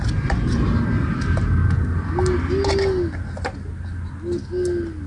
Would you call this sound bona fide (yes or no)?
yes